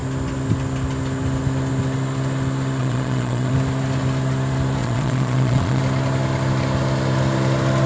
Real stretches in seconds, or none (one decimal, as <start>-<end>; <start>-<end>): 0.0-2.8; 3.5-4.8; 5.8-7.9